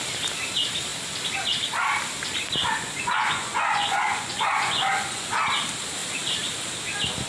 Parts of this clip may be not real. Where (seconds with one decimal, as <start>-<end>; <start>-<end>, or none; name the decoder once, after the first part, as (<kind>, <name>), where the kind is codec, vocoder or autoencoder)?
2.6-5.3 (vocoder, Vocos)